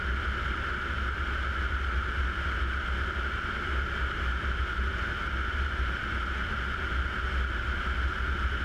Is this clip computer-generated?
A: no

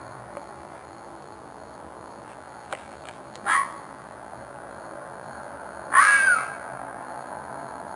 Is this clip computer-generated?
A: yes